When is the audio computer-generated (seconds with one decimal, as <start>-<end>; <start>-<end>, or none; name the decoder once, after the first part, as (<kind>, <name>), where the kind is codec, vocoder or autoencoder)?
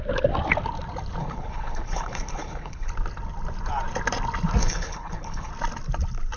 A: 1.2-2.9 (codec, HILCodec); 4.6-5.5